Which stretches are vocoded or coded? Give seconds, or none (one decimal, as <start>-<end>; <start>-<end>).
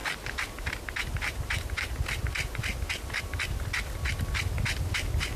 none